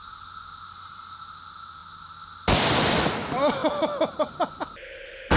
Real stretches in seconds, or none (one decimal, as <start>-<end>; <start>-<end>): 0.0-5.4